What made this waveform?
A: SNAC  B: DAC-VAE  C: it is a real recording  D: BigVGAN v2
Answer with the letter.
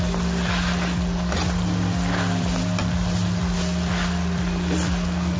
C